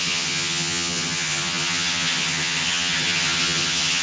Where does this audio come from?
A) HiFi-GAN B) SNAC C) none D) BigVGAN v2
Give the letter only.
A